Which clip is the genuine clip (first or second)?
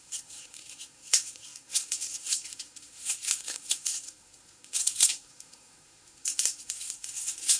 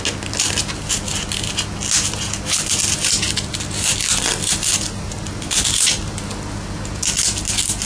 second